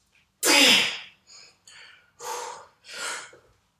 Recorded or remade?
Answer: recorded